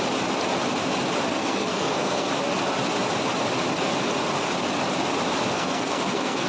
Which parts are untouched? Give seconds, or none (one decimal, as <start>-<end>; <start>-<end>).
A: 0.0-1.3; 2.3-5.5